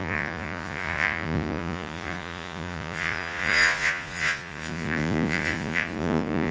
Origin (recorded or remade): remade